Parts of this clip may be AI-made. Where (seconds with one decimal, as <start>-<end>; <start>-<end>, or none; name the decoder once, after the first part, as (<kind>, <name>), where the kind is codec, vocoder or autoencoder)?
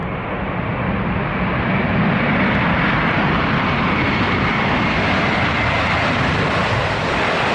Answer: none